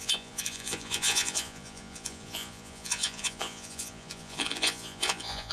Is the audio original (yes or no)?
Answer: no